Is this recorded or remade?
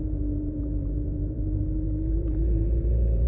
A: remade